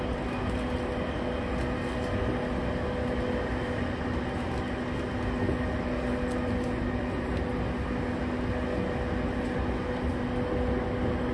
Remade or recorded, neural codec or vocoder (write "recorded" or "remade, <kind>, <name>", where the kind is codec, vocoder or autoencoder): recorded